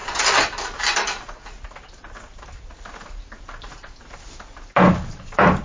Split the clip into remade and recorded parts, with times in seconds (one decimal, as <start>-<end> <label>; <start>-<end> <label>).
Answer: 0.0-5.6 recorded